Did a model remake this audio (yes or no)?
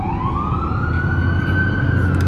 no